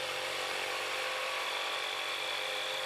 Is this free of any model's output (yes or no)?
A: no